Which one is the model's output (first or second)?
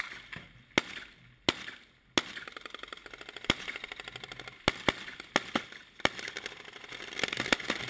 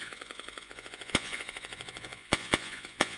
second